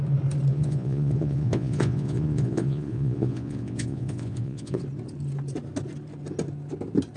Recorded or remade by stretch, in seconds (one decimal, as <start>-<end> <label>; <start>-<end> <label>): 0.0-0.5 recorded; 0.5-4.8 remade; 4.8-7.2 recorded